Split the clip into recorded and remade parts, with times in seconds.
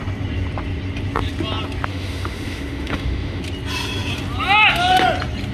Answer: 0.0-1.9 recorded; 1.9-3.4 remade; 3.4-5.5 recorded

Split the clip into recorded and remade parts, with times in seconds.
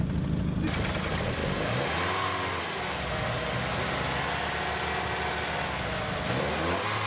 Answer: 0.0-7.1 recorded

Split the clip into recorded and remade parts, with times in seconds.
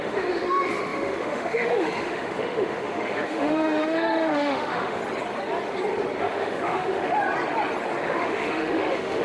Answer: 0.0-5.0 remade; 5.0-6.2 recorded; 6.2-7.2 remade; 7.2-8.0 recorded; 8.0-9.2 remade